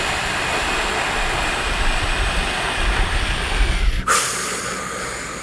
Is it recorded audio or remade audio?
recorded